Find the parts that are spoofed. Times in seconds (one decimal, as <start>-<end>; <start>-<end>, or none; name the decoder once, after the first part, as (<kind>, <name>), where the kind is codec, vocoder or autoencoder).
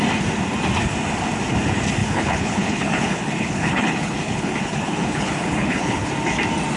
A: 2.0-6.1 (codec, HILCodec)